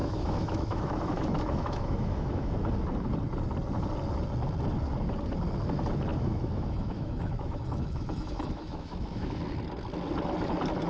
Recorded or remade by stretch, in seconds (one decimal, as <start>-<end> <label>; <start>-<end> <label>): 0.0-2.5 remade; 2.5-6.1 recorded; 6.1-9.4 remade; 9.4-10.9 recorded